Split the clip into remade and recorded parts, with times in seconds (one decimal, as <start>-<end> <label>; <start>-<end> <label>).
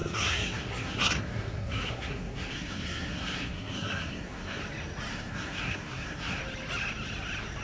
0.0-4.6 remade; 4.6-5.1 recorded; 5.1-6.4 remade; 6.4-7.6 recorded